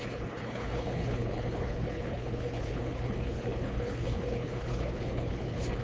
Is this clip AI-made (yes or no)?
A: yes